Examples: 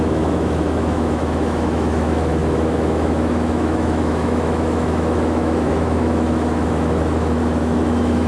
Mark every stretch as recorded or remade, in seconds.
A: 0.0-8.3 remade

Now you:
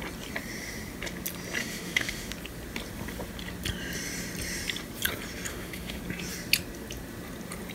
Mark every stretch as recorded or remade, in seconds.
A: 0.0-1.6 recorded; 1.6-2.3 remade; 2.3-5.5 recorded; 5.5-6.0 remade; 6.0-7.7 recorded

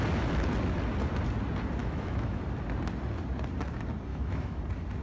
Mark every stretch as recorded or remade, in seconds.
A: 0.0-1.8 recorded; 1.8-2.4 remade; 2.4-4.1 recorded; 4.1-4.6 remade; 4.6-5.0 recorded

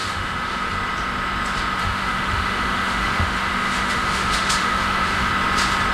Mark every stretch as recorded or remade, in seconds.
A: 0.0-0.7 remade; 0.7-1.8 recorded; 1.8-5.3 remade; 5.3-5.9 recorded